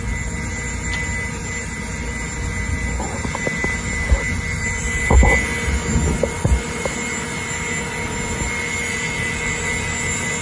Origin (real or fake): real